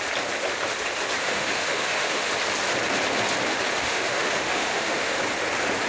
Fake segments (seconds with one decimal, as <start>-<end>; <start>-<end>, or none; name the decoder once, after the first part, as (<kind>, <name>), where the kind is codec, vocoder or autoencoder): 1.2-2.3 (autoencoder, DAC-VAE); 3.8-5.2